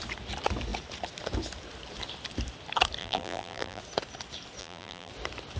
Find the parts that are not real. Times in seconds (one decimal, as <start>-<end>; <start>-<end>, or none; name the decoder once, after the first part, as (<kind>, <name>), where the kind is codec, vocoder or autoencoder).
3.0-3.8 (vocoder, BigVGAN v2); 4.6-5.1